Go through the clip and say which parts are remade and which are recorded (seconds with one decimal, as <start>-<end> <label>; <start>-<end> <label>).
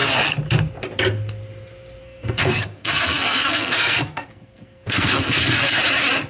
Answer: 0.0-2.0 recorded; 2.0-5.8 remade; 5.8-6.3 recorded